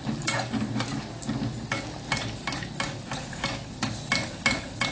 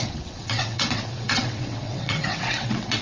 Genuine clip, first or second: first